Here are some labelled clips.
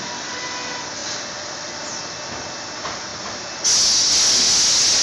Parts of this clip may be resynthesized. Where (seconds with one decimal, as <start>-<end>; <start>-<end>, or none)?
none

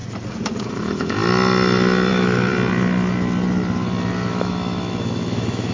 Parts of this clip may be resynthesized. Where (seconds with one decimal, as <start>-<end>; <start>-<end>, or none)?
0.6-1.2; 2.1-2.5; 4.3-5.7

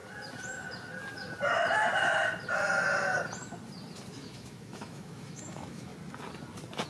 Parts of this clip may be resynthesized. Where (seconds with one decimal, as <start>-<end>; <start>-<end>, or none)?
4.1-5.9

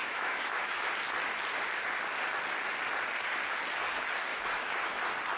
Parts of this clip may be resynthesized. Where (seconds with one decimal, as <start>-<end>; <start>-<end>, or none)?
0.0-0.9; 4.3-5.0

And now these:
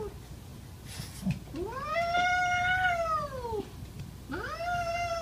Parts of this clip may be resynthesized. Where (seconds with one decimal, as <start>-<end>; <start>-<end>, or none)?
none

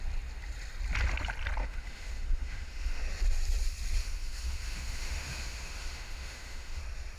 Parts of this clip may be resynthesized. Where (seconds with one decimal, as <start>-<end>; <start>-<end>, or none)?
1.6-3.0; 4.0-6.8